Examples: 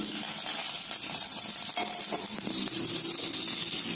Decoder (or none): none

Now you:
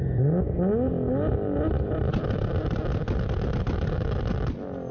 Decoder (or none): none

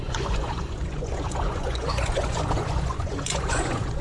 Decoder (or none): vocoder, Vocos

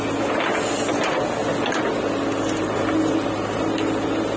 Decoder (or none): none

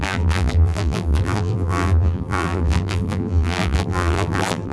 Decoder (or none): vocoder, BigVGAN v2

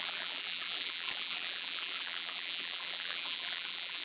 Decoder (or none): vocoder, BigVGAN v2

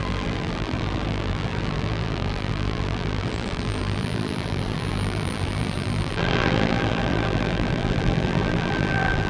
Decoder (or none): vocoder, BigVGAN v2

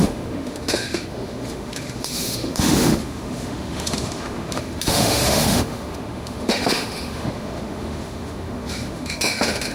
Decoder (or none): autoencoder, DAC-VAE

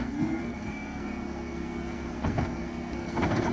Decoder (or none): codec, SNAC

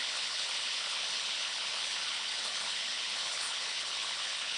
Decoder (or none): codec, HILCodec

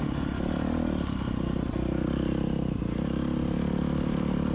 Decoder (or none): none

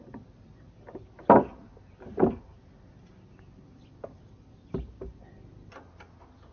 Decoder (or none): none